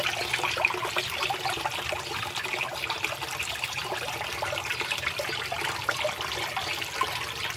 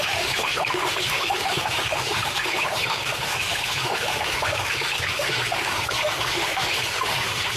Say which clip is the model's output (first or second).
second